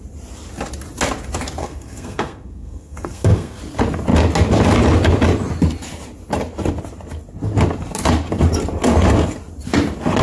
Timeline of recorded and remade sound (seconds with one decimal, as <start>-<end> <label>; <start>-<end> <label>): 0.0-1.6 recorded; 1.6-3.6 remade; 3.6-10.2 recorded